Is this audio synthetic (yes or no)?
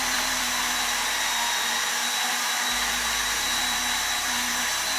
yes